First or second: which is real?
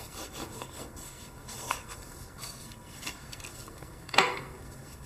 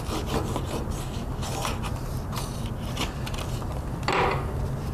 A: second